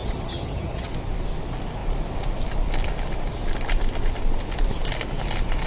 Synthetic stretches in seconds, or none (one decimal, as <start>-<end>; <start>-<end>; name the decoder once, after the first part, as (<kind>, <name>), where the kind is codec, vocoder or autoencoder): 0.0-0.9 (vocoder, HiFi-GAN)